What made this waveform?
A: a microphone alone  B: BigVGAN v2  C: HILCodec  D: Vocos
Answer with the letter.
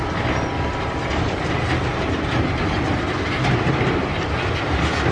A